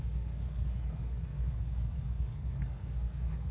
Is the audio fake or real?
fake